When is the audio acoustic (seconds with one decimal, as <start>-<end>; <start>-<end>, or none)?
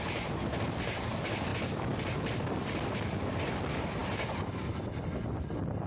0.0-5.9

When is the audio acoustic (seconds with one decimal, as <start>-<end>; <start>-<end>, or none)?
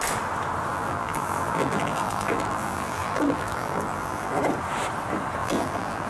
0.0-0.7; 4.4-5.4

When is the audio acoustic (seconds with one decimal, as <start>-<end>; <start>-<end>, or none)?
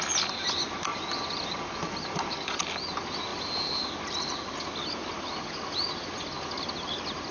0.0-0.9; 2.8-3.3; 4.7-7.3